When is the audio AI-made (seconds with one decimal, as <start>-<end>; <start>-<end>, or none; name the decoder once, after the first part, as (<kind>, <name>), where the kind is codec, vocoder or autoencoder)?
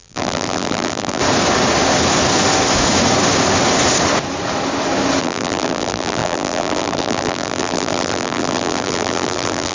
0.0-1.2 (vocoder, BigVGAN v2); 5.2-9.7